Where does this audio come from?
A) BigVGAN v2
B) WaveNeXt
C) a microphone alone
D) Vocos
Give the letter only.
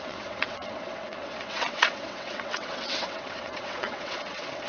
B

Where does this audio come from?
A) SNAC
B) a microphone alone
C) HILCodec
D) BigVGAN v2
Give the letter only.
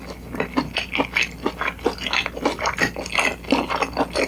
B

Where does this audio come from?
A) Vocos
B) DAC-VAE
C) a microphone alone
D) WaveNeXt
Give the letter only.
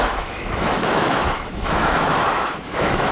B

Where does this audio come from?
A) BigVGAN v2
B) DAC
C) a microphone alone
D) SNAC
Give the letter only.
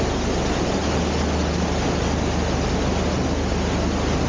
C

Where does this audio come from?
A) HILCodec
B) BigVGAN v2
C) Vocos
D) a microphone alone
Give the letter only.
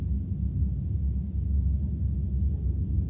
D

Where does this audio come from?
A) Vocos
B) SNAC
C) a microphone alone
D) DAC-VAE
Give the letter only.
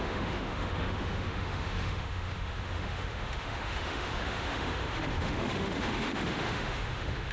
D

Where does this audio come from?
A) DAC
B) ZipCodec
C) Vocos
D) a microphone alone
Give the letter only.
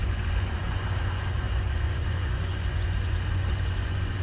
C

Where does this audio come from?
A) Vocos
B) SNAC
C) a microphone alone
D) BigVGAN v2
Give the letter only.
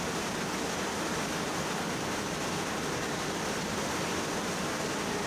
C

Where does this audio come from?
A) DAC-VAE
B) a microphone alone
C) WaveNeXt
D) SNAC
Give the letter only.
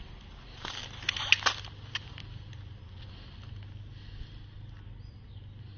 B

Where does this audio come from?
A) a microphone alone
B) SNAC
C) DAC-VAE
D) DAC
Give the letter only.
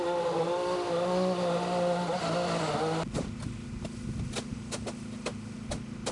A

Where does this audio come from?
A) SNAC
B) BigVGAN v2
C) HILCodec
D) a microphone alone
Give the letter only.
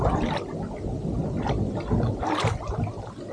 D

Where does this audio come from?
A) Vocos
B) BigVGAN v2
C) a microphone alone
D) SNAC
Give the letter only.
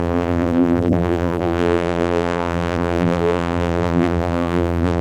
B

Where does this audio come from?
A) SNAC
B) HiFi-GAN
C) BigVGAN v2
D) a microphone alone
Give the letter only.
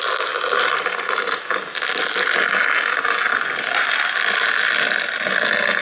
D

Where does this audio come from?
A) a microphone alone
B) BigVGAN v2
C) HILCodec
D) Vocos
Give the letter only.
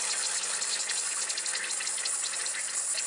A